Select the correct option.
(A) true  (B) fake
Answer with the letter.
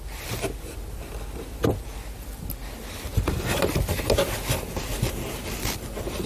A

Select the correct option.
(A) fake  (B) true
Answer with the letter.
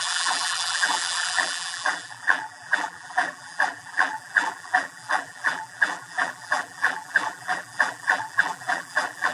A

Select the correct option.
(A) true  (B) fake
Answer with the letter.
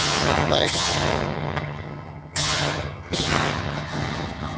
B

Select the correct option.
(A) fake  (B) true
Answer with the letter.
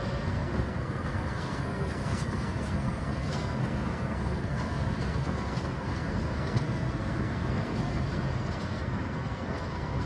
A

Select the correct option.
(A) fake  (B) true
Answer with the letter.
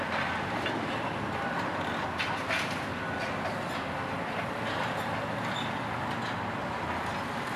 B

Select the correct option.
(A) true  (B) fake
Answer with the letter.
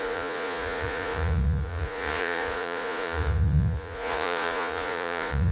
B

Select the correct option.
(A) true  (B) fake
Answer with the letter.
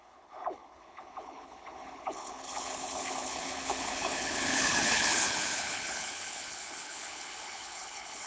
B